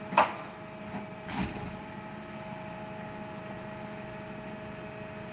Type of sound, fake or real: real